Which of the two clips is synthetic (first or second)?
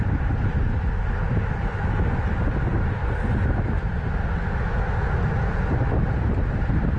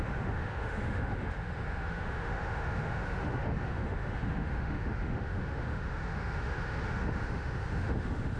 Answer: second